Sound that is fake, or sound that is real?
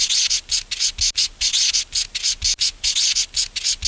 real